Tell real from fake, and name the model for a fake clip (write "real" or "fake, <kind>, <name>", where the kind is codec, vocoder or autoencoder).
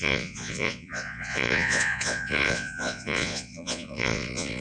fake, vocoder, Vocos